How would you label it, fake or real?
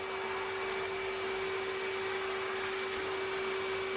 real